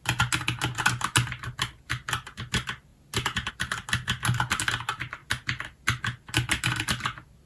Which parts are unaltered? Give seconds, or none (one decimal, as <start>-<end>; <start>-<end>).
0.0-7.5